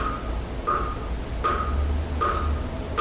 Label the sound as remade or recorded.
recorded